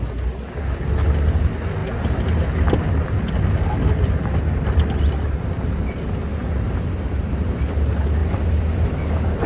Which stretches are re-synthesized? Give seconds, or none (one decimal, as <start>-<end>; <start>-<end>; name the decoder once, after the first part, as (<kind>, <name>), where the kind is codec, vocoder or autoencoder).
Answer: 8.2-9.5 (vocoder, BigVGAN v2)